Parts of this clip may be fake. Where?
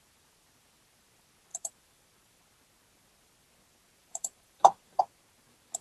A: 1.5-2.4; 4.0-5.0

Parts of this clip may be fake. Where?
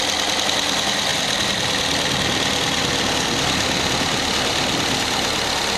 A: none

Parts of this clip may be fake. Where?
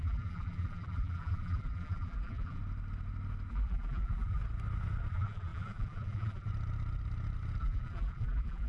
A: 0.0-2.6; 3.5-4.4; 5.1-6.5; 7.6-8.7